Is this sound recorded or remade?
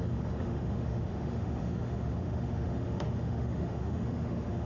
remade